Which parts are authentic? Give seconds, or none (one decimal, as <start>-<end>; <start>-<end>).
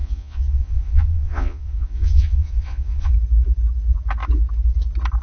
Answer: 3.1-5.2